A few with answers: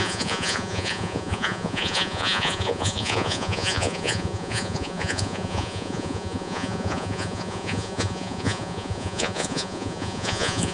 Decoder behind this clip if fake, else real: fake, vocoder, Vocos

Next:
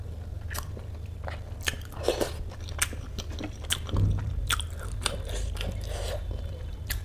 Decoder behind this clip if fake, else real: real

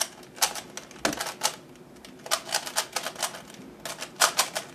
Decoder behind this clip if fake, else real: real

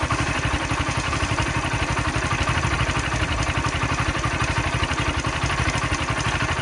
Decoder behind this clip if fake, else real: real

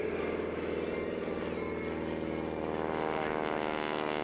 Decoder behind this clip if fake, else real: real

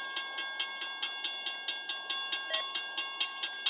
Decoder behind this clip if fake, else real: real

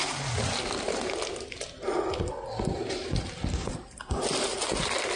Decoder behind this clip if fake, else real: real